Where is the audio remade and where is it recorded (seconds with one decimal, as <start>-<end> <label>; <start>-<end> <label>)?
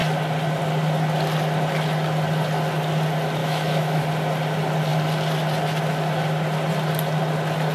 0.0-3.4 recorded; 3.4-4.0 remade; 4.0-7.7 recorded